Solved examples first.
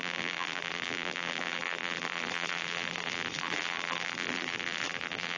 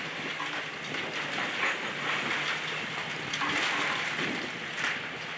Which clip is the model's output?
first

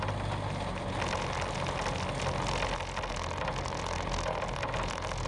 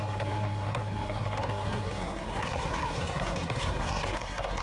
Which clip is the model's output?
second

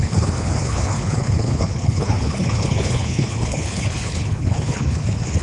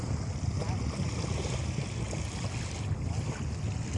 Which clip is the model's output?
first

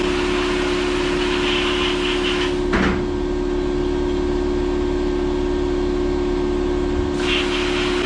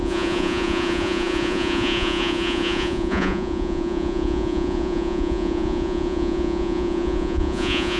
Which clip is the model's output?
second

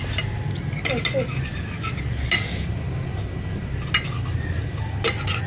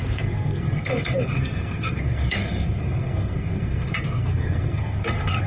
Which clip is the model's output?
second